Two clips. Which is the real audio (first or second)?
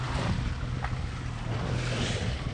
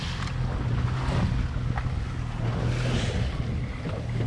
second